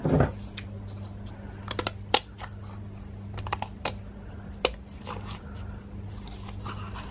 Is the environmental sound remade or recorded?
remade